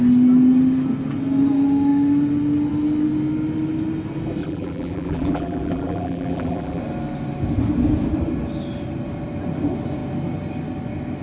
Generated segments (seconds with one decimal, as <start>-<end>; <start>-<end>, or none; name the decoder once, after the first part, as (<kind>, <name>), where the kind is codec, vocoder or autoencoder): 4.4-6.8 (vocoder, BigVGAN v2)